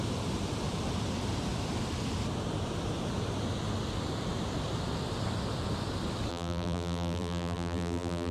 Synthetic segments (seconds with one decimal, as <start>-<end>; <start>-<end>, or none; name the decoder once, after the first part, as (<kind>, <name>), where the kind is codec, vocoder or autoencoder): 6.3-8.3 (vocoder, BigVGAN v2)

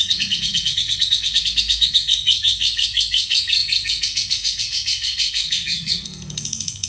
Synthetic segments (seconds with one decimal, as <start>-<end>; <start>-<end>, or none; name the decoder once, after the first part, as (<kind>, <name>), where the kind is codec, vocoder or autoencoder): 0.0-6.9 (codec, SNAC)

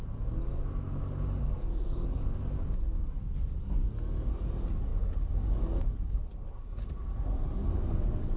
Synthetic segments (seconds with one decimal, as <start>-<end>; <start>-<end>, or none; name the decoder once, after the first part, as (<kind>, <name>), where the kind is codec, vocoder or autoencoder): 1.4-2.2 (codec, SNAC); 7.7-8.4

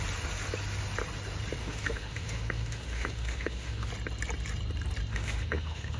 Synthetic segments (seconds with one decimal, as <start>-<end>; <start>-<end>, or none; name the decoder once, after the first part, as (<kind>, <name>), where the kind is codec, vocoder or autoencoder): 1.6-3.9 (autoencoder, DAC-VAE); 5.1-6.0

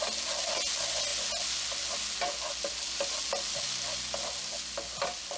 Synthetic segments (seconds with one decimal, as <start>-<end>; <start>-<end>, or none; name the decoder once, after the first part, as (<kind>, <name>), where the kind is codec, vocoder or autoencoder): none

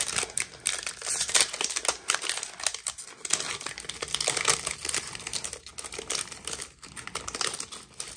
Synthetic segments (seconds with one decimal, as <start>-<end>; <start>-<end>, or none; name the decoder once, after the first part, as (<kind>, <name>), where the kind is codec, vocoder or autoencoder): none